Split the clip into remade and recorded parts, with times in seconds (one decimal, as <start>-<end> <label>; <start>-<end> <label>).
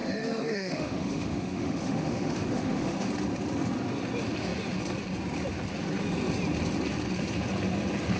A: 0.0-3.1 remade; 3.1-8.2 recorded